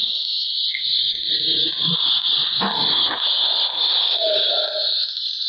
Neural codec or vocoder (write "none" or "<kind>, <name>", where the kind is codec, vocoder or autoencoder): none